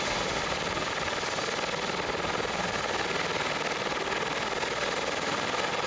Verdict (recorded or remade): recorded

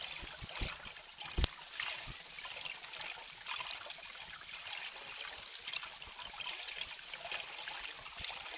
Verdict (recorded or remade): recorded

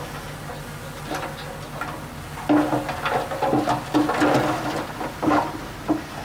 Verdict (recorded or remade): recorded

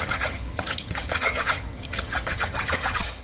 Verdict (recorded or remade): remade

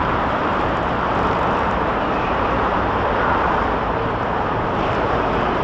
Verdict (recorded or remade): remade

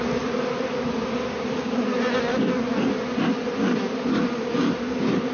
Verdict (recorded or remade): recorded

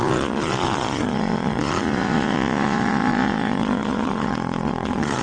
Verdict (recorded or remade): remade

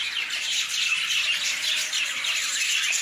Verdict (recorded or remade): recorded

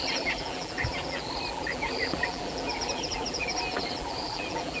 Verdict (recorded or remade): remade